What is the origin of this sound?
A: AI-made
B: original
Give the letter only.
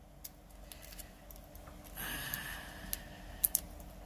B